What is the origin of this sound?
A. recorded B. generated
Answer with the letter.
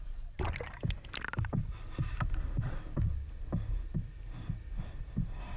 A